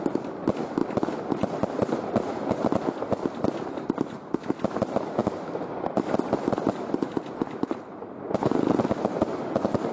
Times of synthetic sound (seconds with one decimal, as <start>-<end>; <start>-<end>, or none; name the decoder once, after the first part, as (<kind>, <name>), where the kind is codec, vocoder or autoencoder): none